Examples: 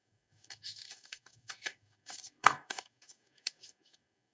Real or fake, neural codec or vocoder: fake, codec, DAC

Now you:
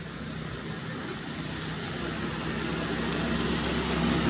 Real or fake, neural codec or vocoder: real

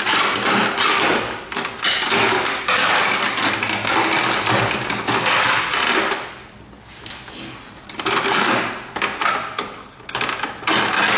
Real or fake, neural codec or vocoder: real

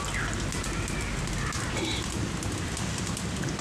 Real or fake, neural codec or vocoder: real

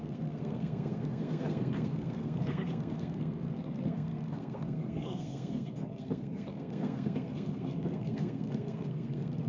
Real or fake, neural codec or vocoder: fake, codec, SNAC